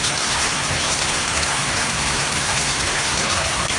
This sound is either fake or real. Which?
fake